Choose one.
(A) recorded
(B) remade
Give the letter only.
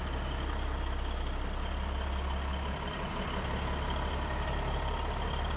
A